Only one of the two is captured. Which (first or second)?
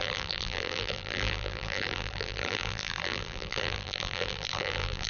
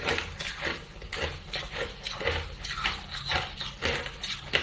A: second